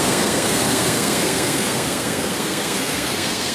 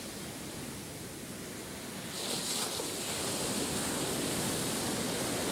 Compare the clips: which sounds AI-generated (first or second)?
first